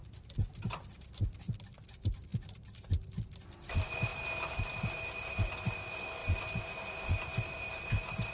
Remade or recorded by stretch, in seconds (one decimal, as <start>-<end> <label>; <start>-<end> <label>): 0.0-8.3 recorded